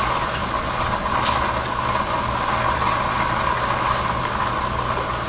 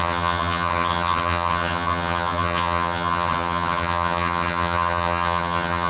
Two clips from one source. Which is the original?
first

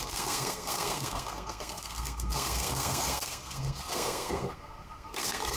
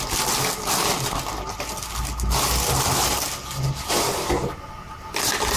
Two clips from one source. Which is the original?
second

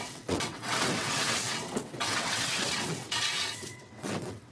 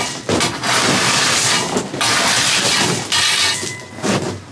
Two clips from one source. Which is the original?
second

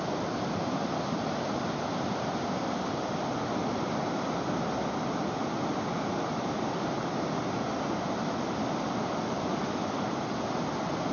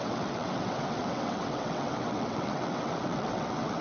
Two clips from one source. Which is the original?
first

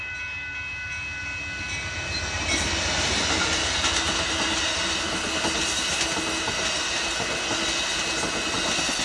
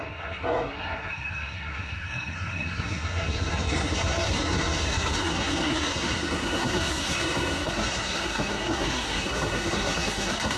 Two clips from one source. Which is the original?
first